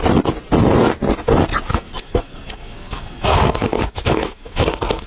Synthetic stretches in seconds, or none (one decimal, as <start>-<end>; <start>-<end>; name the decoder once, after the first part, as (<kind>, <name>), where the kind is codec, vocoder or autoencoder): 1.7-5.1 (codec, SNAC)